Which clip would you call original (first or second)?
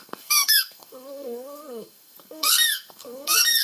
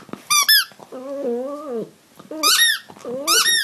second